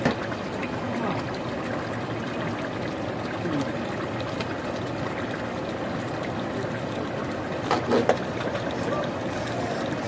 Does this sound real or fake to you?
real